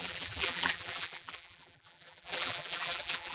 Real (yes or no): no